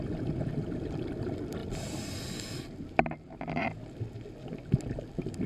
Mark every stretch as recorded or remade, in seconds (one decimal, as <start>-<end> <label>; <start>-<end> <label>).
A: 0.0-5.5 recorded

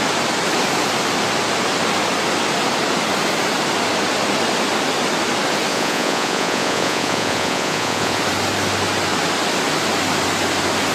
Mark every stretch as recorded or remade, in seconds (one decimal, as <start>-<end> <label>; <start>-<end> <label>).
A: 0.0-5.7 recorded; 5.7-8.2 remade; 8.2-10.9 recorded

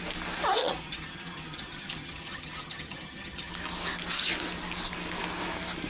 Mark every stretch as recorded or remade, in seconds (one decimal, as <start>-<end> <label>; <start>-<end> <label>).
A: 0.0-0.6 recorded; 0.6-3.5 remade; 3.5-5.9 recorded

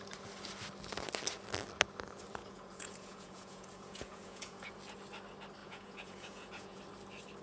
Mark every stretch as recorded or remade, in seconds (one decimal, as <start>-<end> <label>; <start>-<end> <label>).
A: 0.0-2.4 recorded; 2.4-4.7 remade; 4.7-5.6 recorded; 5.6-6.8 remade; 6.8-7.4 recorded

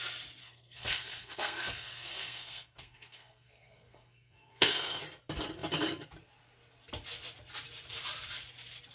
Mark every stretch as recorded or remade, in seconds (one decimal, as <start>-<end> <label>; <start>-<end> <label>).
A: 0.0-0.4 recorded; 0.4-5.0 remade; 5.0-8.9 recorded

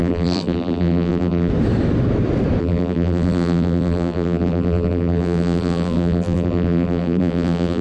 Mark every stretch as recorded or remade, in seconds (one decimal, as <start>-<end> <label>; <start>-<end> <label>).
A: 0.0-1.5 remade; 1.5-2.6 recorded; 2.6-7.8 remade

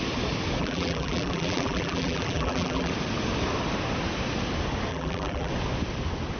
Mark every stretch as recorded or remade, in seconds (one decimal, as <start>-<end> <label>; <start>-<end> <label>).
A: 0.0-0.6 recorded; 0.6-2.9 remade; 2.9-4.9 recorded; 4.9-5.5 remade; 5.5-6.4 recorded